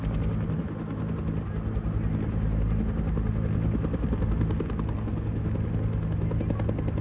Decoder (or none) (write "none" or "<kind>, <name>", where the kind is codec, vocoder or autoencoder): none